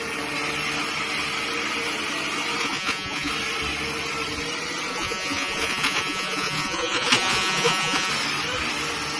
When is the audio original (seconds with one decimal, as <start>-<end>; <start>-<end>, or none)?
0.0-2.6; 3.3-4.9; 8.1-9.2